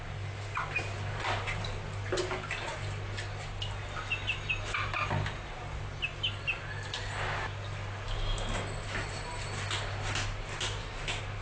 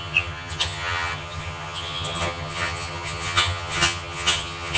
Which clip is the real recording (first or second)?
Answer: first